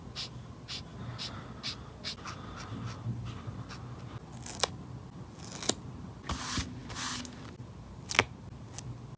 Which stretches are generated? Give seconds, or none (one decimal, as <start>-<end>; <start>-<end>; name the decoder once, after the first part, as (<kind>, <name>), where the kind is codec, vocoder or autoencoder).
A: none